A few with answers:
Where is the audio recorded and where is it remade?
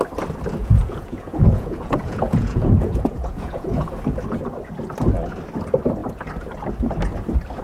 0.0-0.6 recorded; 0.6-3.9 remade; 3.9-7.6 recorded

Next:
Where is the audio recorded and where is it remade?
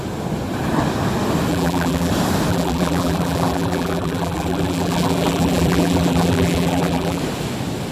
0.0-1.5 recorded; 1.5-2.1 remade; 2.1-2.5 recorded; 2.5-7.2 remade; 7.2-7.9 recorded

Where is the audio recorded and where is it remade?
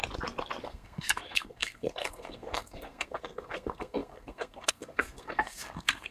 0.0-0.6 recorded; 0.6-6.1 remade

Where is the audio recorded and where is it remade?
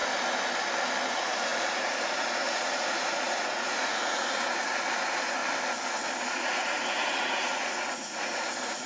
0.0-1.1 recorded; 1.1-5.4 remade; 5.4-6.2 recorded; 6.2-8.9 remade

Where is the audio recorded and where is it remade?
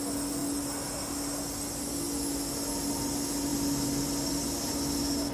0.0-5.3 recorded